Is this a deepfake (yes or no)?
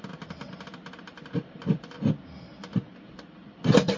no